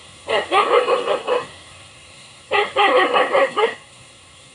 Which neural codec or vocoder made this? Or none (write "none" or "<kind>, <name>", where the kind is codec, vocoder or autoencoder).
codec, SNAC